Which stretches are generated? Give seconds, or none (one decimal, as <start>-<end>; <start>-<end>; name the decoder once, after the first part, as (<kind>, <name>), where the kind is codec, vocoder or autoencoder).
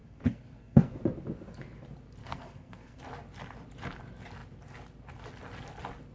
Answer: 0.0-1.0 (codec, SNAC); 2.2-3.0